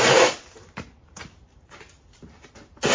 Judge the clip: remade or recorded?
remade